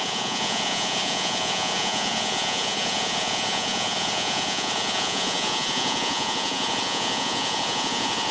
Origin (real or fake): fake